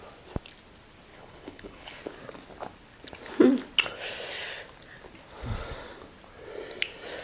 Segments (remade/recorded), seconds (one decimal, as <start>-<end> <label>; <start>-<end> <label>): 0.0-1.1 recorded; 1.1-2.0 remade; 2.0-7.2 recorded